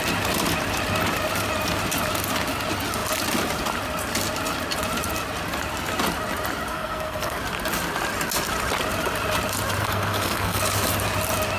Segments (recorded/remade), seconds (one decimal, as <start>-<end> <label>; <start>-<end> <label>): 0.0-6.7 recorded; 6.7-7.4 remade; 7.4-9.8 recorded; 9.8-10.6 remade; 10.6-11.6 recorded